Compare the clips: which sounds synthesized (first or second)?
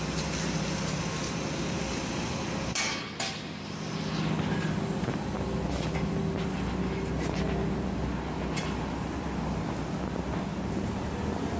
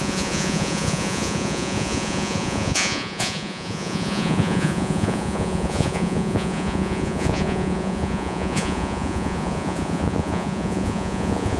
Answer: second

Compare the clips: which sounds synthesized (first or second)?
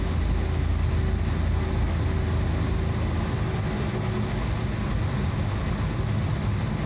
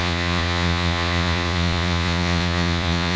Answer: second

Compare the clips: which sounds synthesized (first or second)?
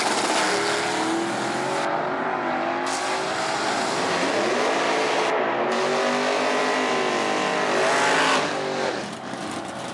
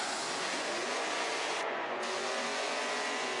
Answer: second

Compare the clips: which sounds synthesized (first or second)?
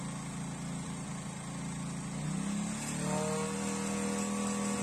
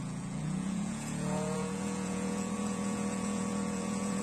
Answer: second